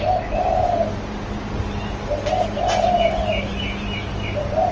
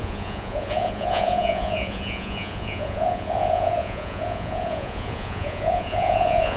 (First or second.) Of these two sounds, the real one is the first